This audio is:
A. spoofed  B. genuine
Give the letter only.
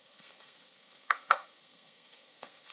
A